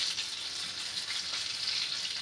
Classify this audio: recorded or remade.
recorded